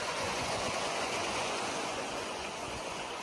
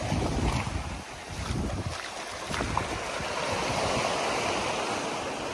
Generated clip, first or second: first